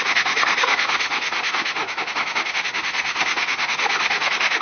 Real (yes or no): no